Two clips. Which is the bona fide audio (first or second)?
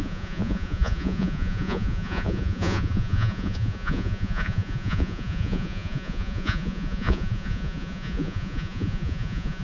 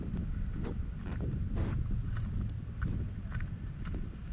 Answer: second